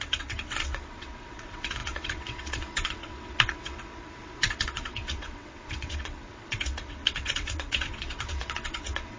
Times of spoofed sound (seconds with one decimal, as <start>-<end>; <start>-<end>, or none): 0.0-9.2